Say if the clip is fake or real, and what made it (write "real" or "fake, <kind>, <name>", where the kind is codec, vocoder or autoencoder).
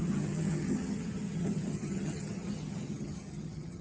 fake, vocoder, HiFi-GAN